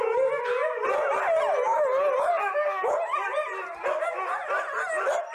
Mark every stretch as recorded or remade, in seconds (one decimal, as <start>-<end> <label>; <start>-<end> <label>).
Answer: 0.0-5.3 recorded